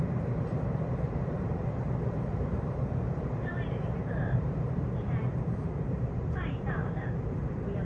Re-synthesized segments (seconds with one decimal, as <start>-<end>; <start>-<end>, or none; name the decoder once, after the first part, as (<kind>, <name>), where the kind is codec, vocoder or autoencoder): 0.0-6.8 (vocoder, BigVGAN v2)